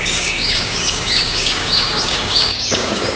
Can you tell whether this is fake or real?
fake